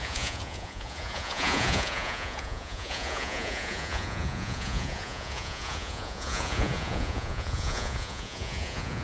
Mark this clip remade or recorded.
remade